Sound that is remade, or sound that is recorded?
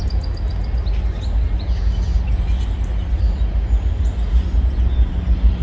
recorded